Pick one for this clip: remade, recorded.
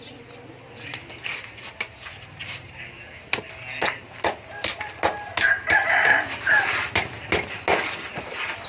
recorded